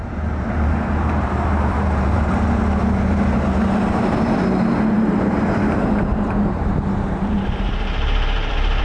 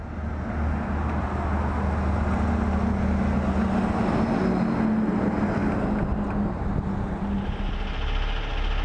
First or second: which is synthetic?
first